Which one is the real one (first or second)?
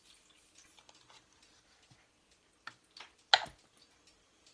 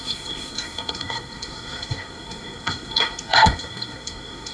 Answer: first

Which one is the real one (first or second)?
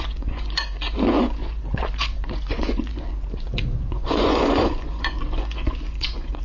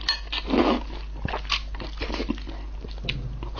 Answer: second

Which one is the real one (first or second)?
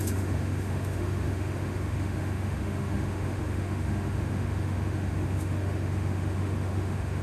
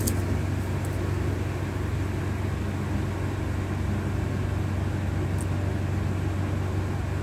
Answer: second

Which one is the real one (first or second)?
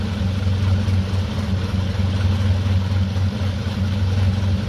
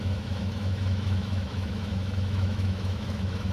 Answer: first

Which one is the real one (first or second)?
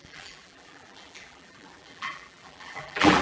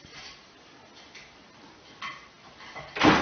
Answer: second